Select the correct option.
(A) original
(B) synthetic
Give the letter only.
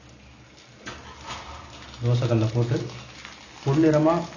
A